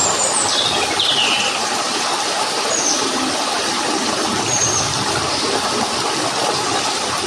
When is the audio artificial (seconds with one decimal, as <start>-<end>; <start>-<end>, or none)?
0.0-7.3